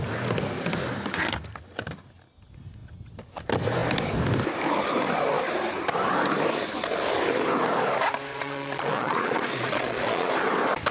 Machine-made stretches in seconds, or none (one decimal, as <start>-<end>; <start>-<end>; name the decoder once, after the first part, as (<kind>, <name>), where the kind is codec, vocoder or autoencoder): 8.3-10.3 (vocoder, Vocos)

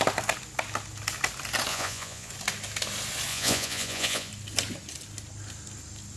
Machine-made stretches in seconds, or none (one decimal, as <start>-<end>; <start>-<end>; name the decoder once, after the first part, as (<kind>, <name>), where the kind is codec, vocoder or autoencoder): 1.7-2.3 (vocoder, Vocos); 3.3-4.3

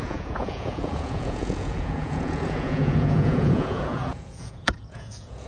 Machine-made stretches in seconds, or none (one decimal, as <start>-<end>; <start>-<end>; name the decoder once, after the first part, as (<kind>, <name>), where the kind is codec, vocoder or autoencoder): 0.0-5.5 (vocoder, Vocos)

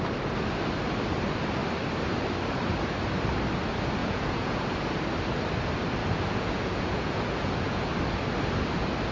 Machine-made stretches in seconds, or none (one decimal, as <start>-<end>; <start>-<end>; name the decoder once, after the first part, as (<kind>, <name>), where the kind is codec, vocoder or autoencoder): 4.0-4.6 (vocoder, Vocos); 6.0-7.9

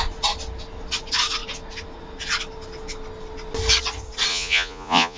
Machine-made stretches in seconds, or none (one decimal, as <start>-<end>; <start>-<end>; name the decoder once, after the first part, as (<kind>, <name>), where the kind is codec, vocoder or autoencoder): 4.3-5.2 (vocoder, Vocos)